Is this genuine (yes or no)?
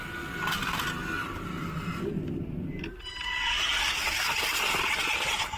yes